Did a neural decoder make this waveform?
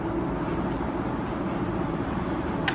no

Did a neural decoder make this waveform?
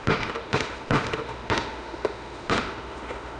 yes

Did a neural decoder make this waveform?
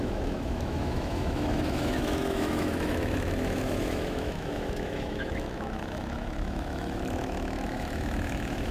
yes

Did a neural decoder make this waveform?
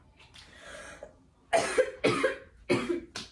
no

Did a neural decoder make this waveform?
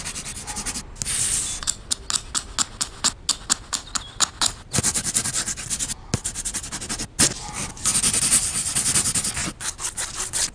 no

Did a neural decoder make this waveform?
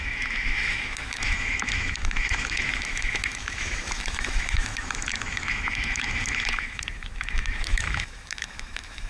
yes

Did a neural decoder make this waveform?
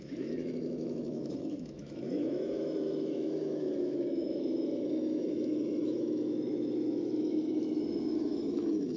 yes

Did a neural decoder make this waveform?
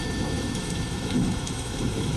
yes